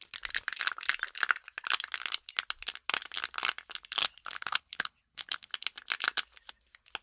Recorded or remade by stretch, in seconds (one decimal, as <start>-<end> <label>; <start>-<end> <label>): 0.0-4.0 recorded; 4.0-5.5 remade; 5.5-7.0 recorded